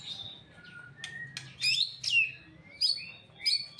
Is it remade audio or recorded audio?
recorded